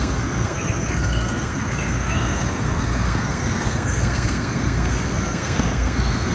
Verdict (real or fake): fake